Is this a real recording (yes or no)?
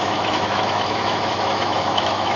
no